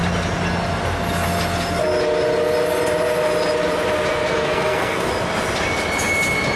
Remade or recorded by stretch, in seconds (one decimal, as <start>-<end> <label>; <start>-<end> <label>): 0.0-4.4 recorded; 4.4-5.1 remade; 5.1-6.6 recorded